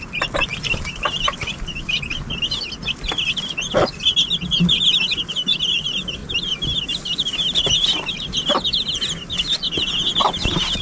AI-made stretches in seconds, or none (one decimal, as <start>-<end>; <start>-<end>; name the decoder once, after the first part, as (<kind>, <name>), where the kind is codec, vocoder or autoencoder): 0.0-6.2 (vocoder, BigVGAN v2); 10.1-10.8